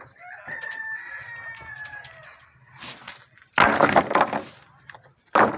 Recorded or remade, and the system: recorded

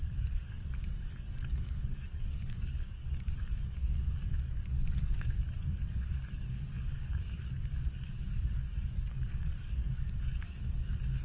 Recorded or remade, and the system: remade, codec, DAC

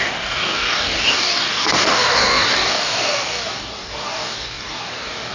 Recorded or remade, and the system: remade, codec, DAC